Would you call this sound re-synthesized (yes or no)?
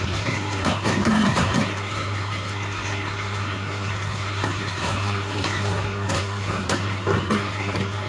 yes